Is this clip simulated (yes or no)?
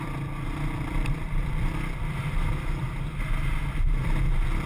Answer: yes